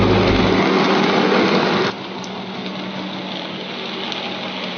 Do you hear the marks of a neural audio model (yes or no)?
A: no